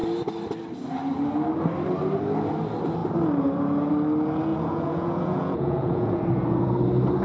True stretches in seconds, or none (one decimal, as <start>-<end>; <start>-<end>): 0.0-4.5; 6.2-7.2